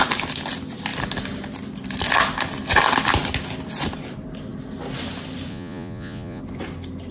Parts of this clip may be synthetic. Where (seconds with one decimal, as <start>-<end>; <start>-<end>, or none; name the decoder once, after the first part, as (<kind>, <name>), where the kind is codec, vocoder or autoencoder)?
5.5-6.4 (vocoder, Vocos)

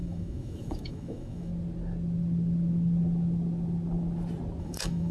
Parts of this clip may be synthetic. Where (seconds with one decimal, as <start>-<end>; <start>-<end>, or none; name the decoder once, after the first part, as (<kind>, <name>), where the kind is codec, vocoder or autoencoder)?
0.0-1.5 (autoencoder, DAC-VAE); 4.6-5.1